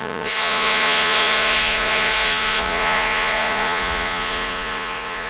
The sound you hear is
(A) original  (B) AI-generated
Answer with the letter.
B